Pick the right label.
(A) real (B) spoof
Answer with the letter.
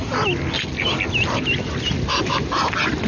A